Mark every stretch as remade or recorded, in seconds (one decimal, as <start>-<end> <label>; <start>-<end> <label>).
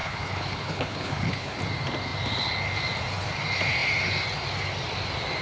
0.0-1.6 remade; 1.6-5.4 recorded